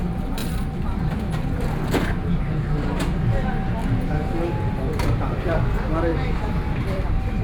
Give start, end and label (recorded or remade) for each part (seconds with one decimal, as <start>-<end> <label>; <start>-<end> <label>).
0.0-0.4 recorded; 0.4-1.3 remade; 1.3-6.1 recorded; 6.1-7.4 remade